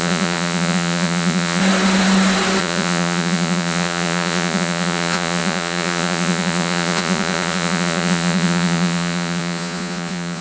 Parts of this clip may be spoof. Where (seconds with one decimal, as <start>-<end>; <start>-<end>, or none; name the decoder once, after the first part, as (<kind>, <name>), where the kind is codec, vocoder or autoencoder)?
0.0-1.6 (vocoder, Vocos); 2.6-10.4